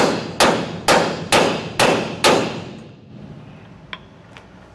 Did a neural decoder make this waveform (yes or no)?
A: no